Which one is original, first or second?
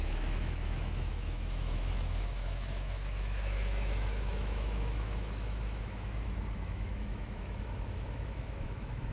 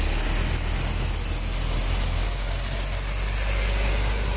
second